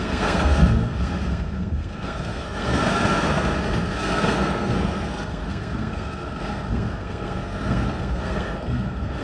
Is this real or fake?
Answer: fake